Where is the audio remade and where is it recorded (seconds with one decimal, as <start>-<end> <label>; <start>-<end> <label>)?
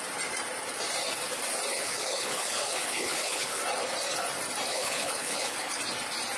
0.0-1.7 recorded; 1.7-3.6 remade; 3.6-4.7 recorded; 4.7-5.8 remade; 5.8-6.4 recorded